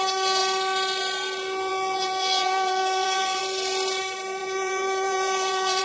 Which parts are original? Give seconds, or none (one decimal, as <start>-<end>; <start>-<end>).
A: 0.0-1.7; 3.4-4.4